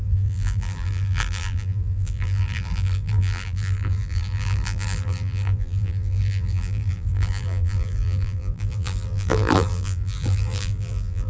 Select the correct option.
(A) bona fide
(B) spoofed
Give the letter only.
B